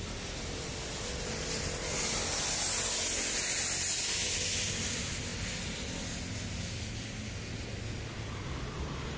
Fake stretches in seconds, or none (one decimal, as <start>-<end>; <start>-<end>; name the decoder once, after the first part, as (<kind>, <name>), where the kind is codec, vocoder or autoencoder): none

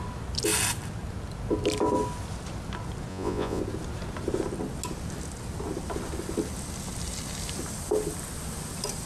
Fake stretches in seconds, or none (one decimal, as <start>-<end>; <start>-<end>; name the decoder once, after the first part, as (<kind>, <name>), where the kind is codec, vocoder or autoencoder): 3.1-3.6 (vocoder, Vocos)